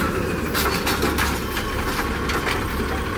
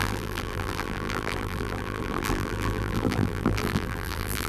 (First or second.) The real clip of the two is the first